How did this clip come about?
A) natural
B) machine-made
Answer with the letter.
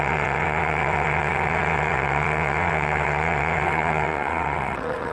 B